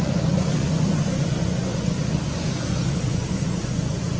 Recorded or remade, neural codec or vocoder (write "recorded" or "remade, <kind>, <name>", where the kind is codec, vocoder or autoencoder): remade, vocoder, Vocos